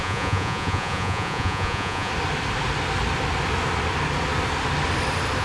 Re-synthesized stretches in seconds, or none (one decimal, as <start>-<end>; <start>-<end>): 0.0-2.1